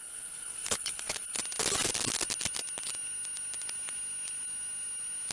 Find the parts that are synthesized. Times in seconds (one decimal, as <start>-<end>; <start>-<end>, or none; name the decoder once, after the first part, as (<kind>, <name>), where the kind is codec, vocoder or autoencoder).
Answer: 0.0-1.4 (codec, HILCodec)